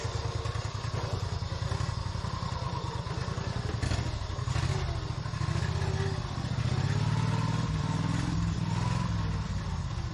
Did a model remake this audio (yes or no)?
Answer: no